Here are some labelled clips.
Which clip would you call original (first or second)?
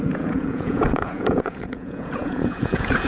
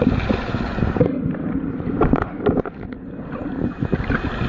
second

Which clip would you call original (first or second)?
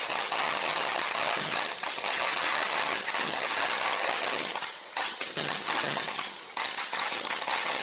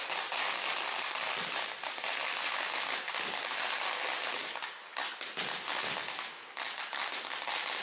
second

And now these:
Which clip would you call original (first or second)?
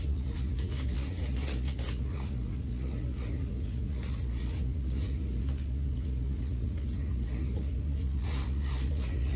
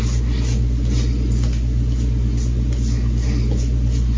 second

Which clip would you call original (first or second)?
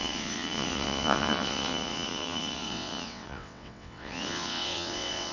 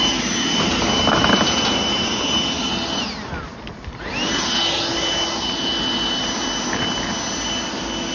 second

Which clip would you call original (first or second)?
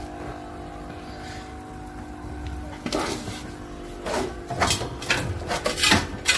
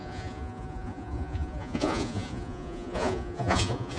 first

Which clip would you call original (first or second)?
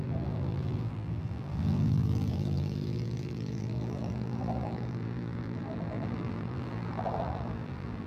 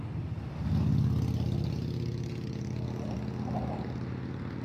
second